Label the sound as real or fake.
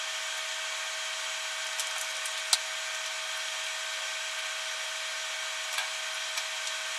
real